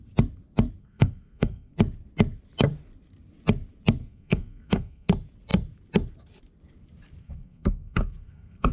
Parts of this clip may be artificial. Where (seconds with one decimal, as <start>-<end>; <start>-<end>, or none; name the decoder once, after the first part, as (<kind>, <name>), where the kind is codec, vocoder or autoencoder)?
0.8-1.7 (codec, SNAC); 4.0-5.1; 7.2-8.7